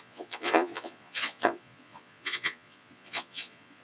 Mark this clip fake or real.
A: fake